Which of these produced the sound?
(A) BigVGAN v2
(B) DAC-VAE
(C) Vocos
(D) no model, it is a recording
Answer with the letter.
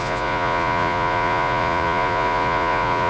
C